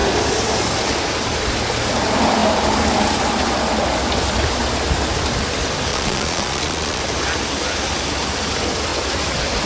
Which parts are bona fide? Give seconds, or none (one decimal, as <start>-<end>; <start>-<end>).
0.0-5.9; 7.0-9.7